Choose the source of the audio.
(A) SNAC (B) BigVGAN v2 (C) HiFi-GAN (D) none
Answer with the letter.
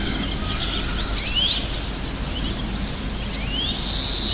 D